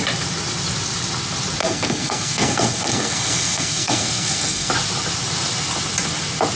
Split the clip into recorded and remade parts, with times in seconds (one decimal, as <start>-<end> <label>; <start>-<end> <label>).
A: 0.0-1.6 recorded; 1.6-4.7 remade; 4.7-6.6 recorded